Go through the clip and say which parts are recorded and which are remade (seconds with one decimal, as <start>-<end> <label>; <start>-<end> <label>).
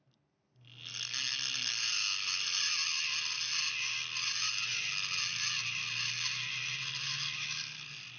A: 0.0-8.2 recorded